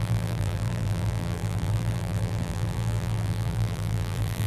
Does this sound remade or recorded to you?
remade